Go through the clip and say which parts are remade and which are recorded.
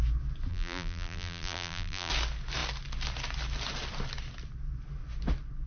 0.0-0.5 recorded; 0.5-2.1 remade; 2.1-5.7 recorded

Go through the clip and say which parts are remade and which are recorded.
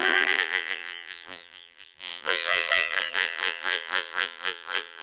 0.0-5.0 remade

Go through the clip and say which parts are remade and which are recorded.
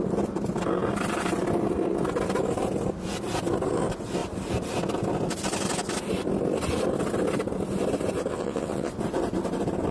0.0-8.3 recorded; 8.3-8.9 remade; 8.9-9.9 recorded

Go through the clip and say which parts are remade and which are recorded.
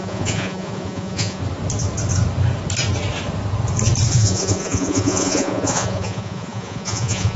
0.0-1.4 remade; 1.4-4.1 recorded; 4.1-7.4 remade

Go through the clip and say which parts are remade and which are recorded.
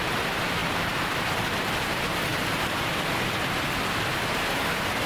0.0-2.3 recorded; 2.3-2.9 remade; 2.9-5.1 recorded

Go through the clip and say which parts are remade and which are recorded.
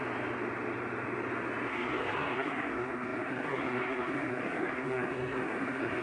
0.0-1.7 recorded; 1.7-6.0 remade